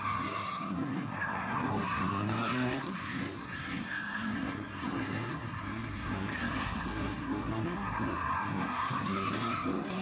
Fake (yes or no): yes